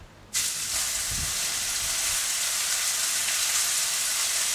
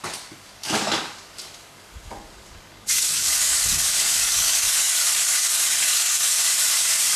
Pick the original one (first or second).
first